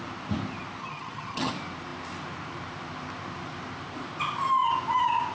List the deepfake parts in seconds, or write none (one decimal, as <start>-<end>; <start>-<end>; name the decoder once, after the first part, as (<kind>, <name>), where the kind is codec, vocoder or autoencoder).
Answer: 0.8-1.5 (vocoder, HiFi-GAN)